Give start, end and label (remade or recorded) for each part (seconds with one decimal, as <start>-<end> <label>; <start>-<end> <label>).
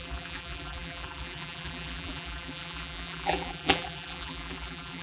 0.0-5.0 remade